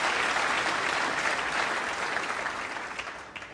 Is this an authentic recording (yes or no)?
yes